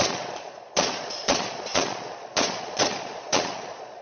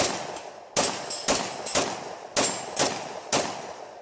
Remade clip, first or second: first